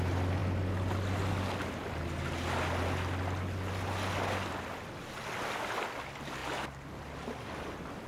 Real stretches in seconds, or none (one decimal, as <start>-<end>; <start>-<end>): 0.0-8.1